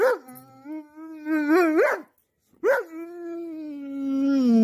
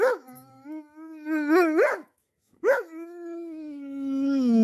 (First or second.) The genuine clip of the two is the first